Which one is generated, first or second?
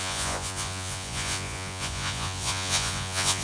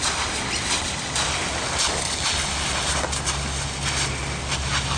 first